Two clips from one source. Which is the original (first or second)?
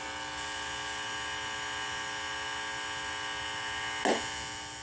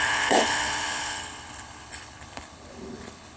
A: first